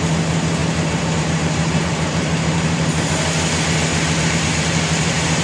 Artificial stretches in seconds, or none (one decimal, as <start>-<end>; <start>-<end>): 0.6-2.9; 3.9-5.4